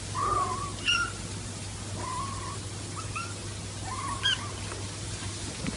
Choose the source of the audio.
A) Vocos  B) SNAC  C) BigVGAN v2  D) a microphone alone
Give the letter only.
D